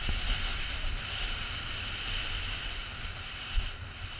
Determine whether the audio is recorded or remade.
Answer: recorded